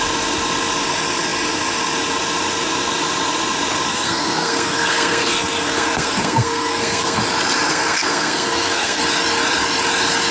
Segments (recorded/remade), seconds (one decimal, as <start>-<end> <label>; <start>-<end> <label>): 0.0-3.9 recorded; 3.9-7.2 remade; 7.2-7.7 recorded; 7.7-9.0 remade; 9.0-10.3 recorded